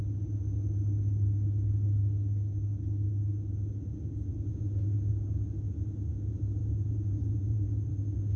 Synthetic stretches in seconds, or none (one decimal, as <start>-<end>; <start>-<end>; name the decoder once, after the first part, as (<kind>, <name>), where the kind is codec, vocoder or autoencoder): 6.6-7.9 (vocoder, Vocos)